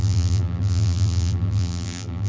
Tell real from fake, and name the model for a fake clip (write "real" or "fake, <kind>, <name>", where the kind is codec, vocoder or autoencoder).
fake, vocoder, BigVGAN v2